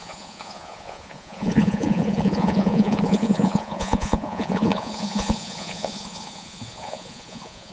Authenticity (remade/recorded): remade